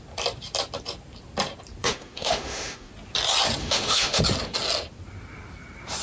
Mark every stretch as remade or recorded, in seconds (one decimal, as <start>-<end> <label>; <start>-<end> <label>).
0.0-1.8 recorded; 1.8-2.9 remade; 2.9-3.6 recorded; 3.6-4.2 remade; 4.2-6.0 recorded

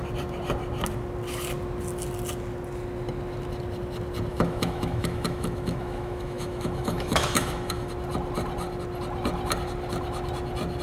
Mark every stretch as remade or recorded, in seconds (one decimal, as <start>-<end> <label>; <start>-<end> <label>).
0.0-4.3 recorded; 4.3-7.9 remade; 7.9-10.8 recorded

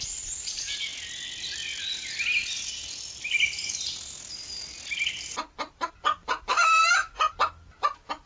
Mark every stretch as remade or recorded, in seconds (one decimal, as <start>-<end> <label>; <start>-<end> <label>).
0.0-6.5 recorded; 6.5-7.1 remade; 7.1-8.3 recorded

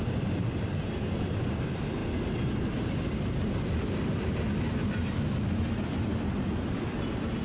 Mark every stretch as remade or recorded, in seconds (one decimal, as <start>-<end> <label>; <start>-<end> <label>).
0.0-7.4 recorded

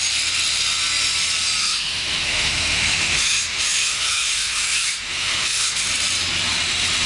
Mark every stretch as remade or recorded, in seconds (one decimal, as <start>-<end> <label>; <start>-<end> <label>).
0.0-1.6 recorded; 1.6-5.9 remade; 5.9-7.1 recorded